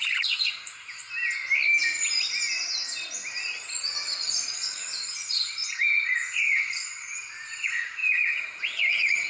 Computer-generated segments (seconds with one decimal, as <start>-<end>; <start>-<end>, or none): 0.0-1.0; 3.3-9.3